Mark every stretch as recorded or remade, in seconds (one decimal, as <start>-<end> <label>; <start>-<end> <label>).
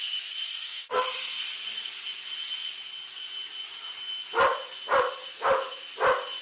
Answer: 0.0-0.5 recorded; 0.5-1.4 remade; 1.4-6.4 recorded